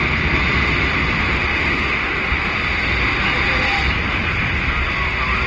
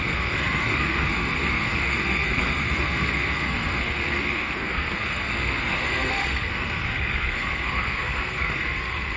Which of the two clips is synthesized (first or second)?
second